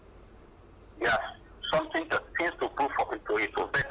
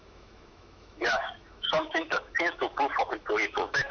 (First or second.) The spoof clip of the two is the second